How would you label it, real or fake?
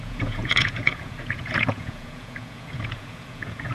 fake